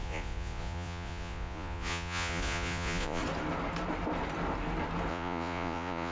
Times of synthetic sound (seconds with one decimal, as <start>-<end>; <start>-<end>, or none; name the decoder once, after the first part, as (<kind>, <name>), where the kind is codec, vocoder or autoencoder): 0.0-3.2 (vocoder, Vocos); 5.1-6.1